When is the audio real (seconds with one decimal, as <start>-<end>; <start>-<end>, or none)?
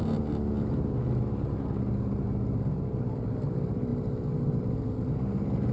0.0-5.7